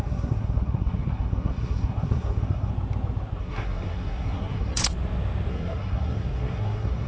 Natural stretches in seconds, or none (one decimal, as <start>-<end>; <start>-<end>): 2.7-3.4; 4.8-5.5

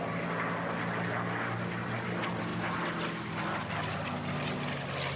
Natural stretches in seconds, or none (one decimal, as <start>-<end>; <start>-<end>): 0.0-5.2

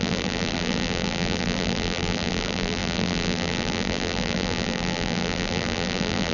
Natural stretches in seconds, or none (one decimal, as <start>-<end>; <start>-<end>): none